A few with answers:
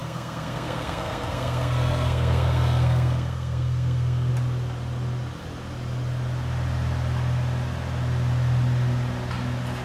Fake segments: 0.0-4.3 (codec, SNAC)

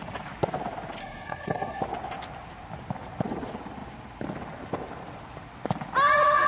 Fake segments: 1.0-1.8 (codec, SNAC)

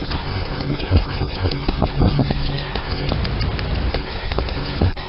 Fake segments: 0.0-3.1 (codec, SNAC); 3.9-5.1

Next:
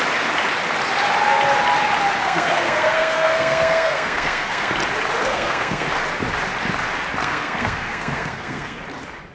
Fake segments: 2.2-4.7 (codec, SNAC); 5.2-5.9; 7.2-8.8